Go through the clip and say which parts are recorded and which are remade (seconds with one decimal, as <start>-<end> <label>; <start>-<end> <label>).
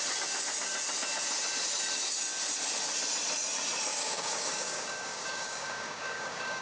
0.0-3.9 recorded; 3.9-6.6 remade